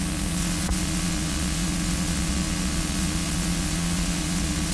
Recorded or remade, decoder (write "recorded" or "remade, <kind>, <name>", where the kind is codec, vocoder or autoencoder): remade, vocoder, Vocos